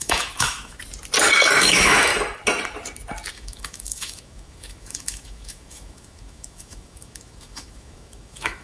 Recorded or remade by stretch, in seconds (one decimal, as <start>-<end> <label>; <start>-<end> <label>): 0.0-0.8 remade; 0.8-1.6 recorded; 1.6-2.1 remade; 2.1-3.3 recorded; 3.3-8.6 remade